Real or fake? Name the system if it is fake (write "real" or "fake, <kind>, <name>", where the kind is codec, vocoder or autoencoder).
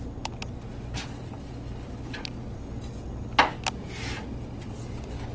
real